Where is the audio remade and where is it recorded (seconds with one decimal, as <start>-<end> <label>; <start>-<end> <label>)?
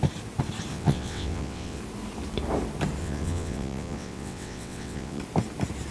0.0-0.7 recorded; 0.7-1.8 remade; 1.8-3.0 recorded; 3.0-5.2 remade; 5.2-5.9 recorded